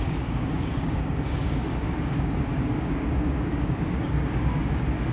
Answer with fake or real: fake